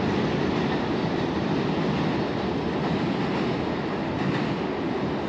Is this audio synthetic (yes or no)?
no